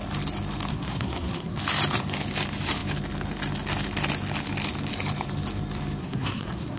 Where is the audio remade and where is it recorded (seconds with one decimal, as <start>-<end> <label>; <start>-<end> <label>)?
0.0-0.7 recorded; 0.7-1.6 remade; 1.6-6.0 recorded; 6.0-6.8 remade